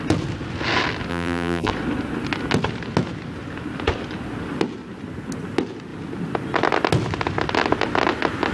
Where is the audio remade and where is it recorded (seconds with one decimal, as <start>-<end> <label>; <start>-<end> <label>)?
0.0-1.1 recorded; 1.1-1.7 remade; 1.7-8.5 recorded